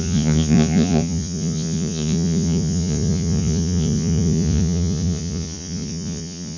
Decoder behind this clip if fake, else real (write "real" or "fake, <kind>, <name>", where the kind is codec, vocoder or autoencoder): fake, vocoder, Vocos